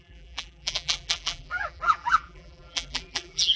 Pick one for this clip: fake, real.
fake